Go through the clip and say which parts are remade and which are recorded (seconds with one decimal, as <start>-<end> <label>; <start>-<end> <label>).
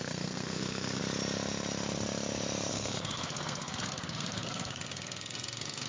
0.0-1.0 remade; 1.0-2.7 recorded; 2.7-5.9 remade